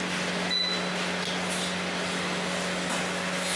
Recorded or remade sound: recorded